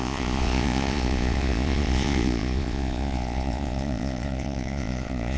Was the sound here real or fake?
fake